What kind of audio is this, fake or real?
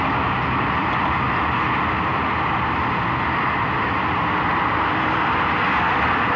real